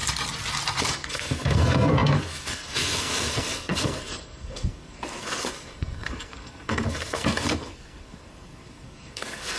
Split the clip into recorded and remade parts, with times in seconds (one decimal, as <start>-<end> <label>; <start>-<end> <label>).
0.0-0.8 recorded; 0.8-9.6 remade